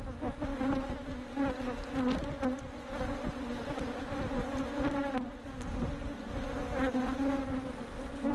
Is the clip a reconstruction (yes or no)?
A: no